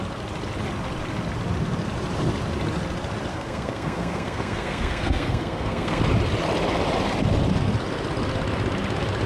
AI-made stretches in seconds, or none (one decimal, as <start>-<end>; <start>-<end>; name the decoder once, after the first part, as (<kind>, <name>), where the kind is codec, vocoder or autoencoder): 3.3-6.0 (codec, SNAC)